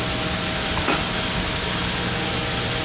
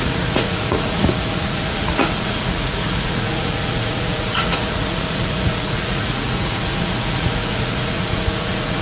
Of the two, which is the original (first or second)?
first